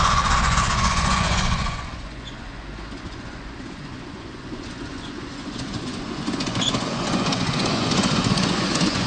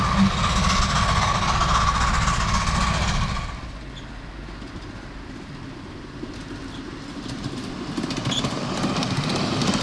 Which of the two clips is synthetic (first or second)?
first